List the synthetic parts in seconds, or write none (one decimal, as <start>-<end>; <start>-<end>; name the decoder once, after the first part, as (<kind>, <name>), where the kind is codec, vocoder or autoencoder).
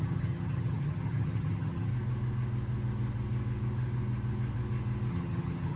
0.0-1.9 (vocoder, HiFi-GAN); 5.1-5.8